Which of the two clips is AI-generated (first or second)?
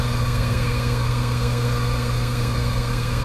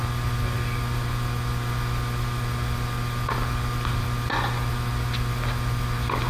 first